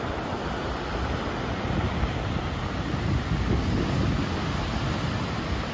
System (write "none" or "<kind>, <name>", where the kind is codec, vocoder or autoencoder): none